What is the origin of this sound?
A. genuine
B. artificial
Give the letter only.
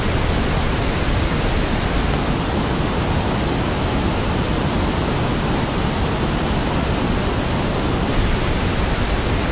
A